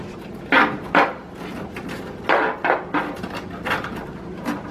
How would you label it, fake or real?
real